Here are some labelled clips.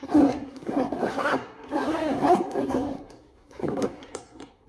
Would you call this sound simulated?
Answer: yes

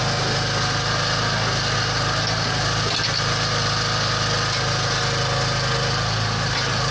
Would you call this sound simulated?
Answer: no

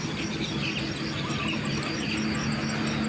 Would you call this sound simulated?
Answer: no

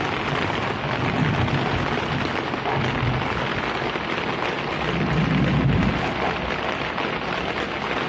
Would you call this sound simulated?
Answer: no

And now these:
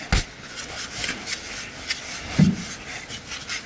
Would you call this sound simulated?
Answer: no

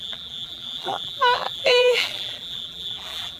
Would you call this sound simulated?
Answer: yes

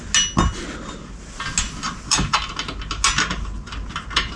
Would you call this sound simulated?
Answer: no